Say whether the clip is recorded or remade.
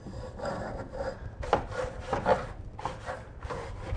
recorded